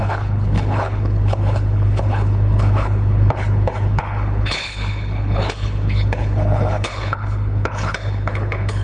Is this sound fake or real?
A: fake